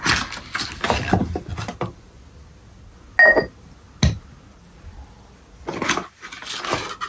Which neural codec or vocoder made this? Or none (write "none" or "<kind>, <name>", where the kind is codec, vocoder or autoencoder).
none